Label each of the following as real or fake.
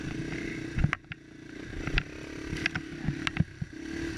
real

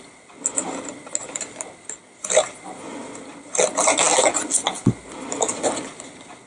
real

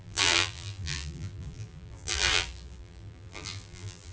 fake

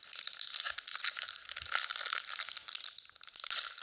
real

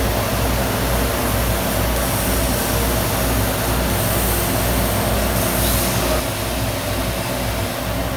real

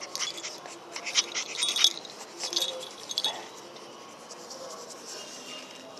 real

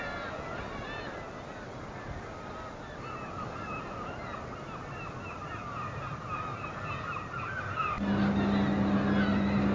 real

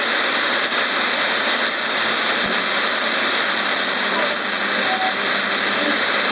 real